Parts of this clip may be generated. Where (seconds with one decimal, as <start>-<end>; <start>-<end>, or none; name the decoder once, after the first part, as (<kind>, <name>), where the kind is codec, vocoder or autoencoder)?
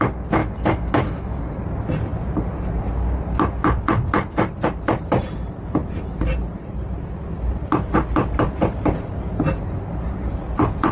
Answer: 0.4-1.4 (autoencoder, DAC-VAE)